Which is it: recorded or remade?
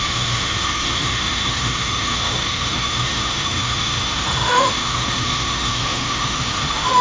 remade